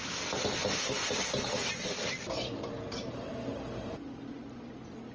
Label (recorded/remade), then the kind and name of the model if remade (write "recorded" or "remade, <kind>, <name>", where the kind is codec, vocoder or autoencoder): recorded